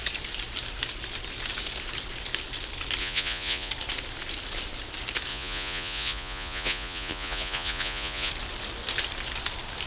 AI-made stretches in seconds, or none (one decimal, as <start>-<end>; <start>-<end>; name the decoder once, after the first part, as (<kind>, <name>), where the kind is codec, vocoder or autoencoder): 3.0-3.7 (vocoder, Vocos); 5.3-8.3